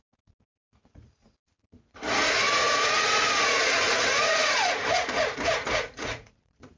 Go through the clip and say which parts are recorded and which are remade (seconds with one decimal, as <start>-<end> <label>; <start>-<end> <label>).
0.0-6.8 remade